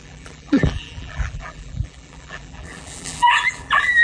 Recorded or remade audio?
remade